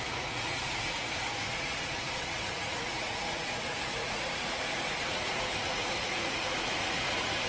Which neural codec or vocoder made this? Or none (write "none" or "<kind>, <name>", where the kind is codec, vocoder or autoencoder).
vocoder, Vocos